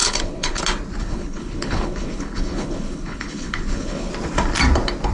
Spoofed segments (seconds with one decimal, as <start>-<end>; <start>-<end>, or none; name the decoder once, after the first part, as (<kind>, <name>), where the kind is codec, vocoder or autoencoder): 0.0-0.6 (codec, HILCodec); 1.0-4.1